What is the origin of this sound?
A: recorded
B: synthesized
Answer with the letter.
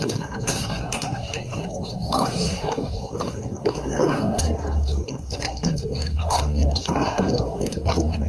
B